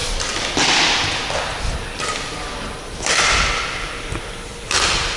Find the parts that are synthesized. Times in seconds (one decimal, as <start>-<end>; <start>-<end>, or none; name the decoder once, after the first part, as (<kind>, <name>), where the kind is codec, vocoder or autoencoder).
none